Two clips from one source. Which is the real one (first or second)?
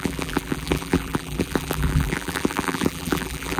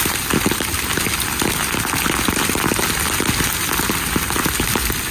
second